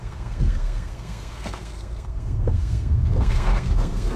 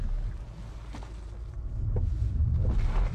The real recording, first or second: second